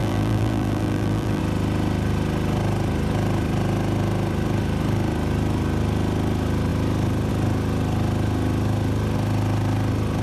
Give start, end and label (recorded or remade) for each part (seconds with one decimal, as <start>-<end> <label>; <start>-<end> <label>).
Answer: 0.0-1.4 remade; 1.4-10.2 recorded